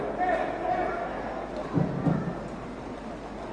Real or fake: real